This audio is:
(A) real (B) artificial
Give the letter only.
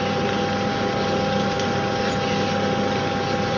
A